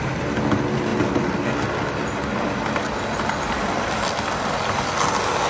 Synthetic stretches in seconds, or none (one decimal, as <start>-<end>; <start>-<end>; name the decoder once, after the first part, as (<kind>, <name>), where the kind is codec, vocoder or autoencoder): none